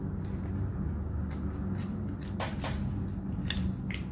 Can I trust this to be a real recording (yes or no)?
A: yes